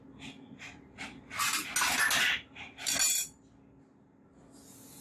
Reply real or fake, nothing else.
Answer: real